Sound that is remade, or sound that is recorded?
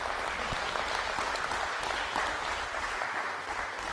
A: recorded